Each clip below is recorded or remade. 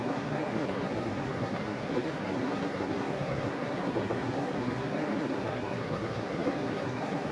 remade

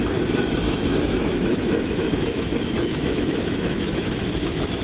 remade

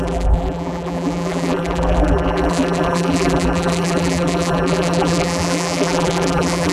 remade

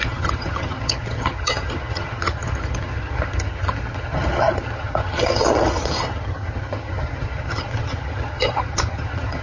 remade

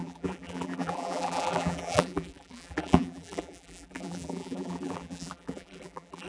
remade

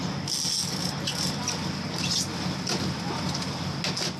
recorded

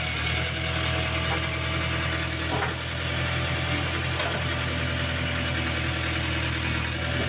recorded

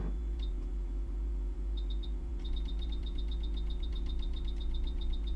remade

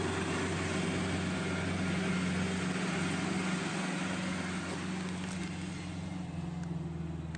recorded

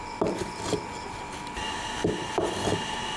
recorded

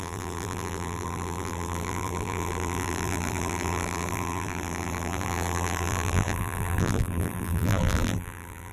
remade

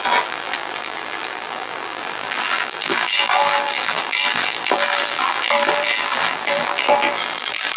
remade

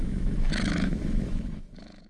remade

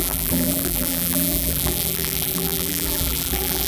remade